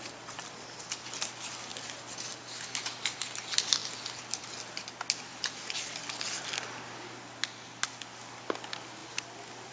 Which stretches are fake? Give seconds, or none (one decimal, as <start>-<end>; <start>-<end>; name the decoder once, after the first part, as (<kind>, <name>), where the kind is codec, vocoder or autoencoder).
none